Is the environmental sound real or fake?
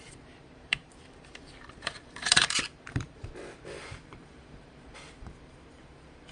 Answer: fake